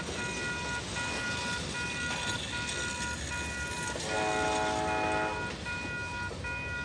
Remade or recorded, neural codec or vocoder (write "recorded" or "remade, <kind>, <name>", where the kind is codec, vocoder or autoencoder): recorded